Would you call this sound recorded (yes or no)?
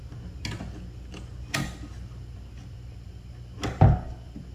yes